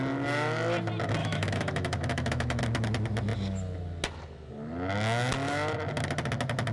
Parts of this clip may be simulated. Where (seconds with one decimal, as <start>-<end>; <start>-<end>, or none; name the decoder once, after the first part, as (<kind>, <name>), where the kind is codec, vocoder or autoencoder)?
1.2-2.6 (autoencoder, DAC-VAE)